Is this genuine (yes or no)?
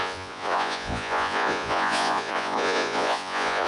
no